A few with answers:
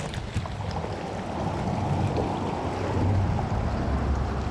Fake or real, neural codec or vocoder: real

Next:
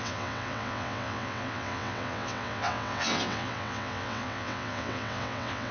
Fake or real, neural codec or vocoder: fake, vocoder, WaveNeXt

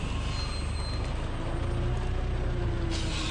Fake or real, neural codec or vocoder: real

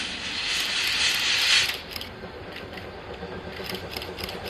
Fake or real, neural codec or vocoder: real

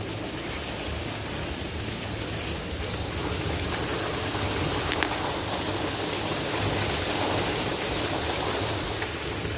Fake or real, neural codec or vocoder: real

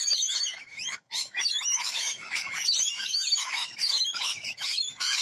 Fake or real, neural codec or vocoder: fake, autoencoder, DAC-VAE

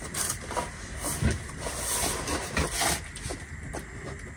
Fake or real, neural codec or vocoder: real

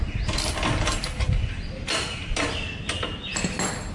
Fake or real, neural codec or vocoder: real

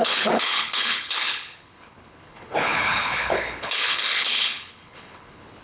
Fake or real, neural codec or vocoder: fake, codec, HILCodec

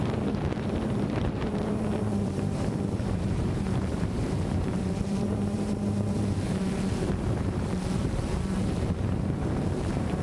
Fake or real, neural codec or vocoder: fake, vocoder, BigVGAN v2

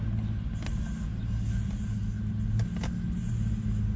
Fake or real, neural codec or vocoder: real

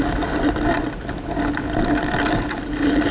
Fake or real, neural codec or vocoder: real